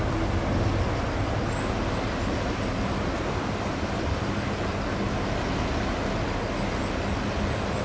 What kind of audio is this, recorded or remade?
recorded